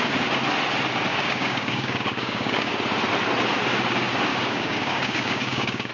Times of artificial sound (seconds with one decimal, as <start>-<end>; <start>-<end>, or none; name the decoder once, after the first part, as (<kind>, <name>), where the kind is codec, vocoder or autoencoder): 1.1-2.7 (codec, DAC); 4.3-5.9